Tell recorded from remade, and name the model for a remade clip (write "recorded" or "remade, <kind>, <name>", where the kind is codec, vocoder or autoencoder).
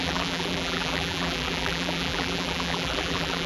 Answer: remade, vocoder, BigVGAN v2